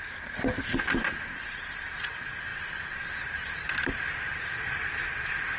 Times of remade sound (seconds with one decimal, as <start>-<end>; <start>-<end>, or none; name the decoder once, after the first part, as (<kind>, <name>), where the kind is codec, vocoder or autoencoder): none

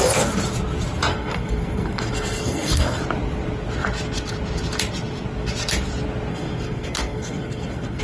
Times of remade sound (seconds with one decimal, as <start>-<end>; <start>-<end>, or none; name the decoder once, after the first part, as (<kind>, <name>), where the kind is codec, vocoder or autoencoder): 1.1-3.0 (codec, SNAC); 6.3-8.0